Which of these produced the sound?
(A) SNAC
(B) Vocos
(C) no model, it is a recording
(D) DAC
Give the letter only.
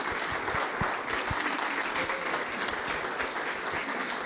C